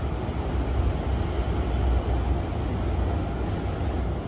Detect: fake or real real